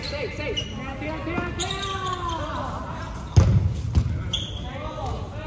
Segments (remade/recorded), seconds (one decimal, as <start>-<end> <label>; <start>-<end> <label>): 0.0-5.5 recorded